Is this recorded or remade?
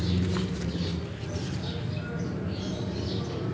recorded